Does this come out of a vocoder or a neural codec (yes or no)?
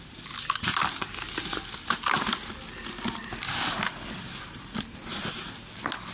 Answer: no